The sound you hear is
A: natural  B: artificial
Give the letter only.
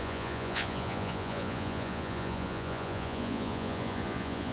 B